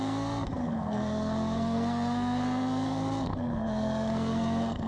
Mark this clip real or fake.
fake